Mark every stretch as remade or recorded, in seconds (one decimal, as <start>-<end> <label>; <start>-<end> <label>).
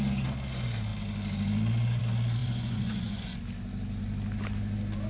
0.0-2.4 recorded; 2.4-3.4 remade; 3.4-5.1 recorded